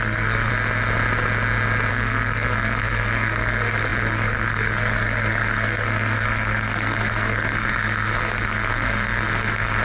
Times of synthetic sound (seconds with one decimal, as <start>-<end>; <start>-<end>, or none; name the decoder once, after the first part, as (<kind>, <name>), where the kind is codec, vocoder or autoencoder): 0.0-0.5 (codec, SNAC); 1.9-9.8